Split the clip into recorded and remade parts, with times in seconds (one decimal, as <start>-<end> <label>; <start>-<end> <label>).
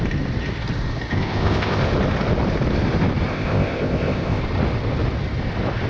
0.0-1.1 recorded; 1.1-1.8 remade; 1.8-3.3 recorded; 3.3-4.4 remade; 4.4-5.9 recorded